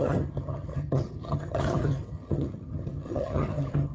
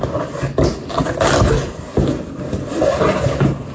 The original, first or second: second